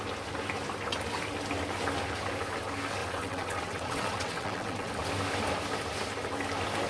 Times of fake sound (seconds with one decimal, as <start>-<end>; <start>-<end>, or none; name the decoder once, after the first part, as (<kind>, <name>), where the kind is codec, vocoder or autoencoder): 3.0-4.9 (vocoder, WaveNeXt)